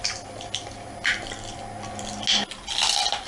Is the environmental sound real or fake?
real